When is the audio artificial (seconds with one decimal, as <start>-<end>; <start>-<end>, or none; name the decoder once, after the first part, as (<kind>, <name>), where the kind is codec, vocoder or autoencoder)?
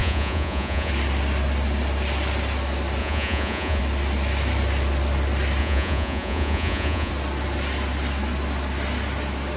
0.0-0.9 (vocoder, Vocos); 3.0-3.8; 5.6-7.1